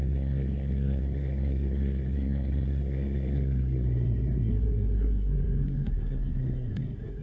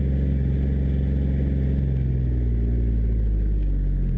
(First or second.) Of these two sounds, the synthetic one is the first